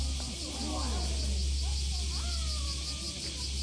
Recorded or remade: recorded